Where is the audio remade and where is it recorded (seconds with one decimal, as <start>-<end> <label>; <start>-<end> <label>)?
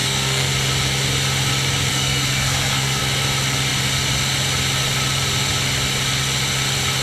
0.0-0.5 remade; 0.5-1.9 recorded; 1.9-3.0 remade; 3.0-7.0 recorded